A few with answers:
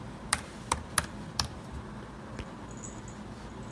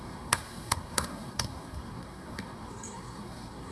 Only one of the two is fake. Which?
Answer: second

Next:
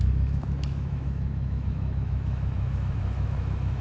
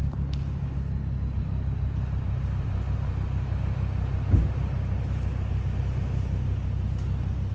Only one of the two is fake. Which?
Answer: first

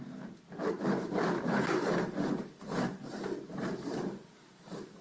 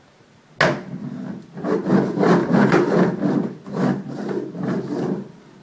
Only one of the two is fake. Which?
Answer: first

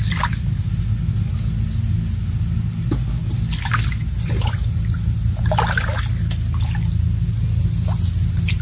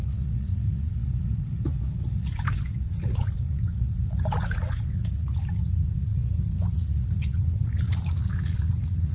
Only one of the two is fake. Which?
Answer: second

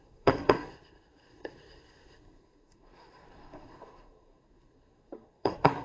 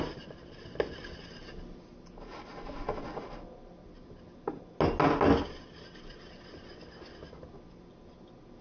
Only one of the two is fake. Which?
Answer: first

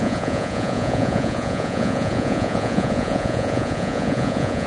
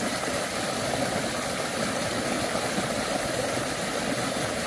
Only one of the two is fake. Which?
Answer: first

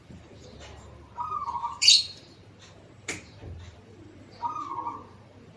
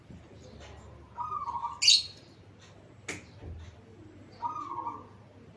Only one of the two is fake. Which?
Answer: first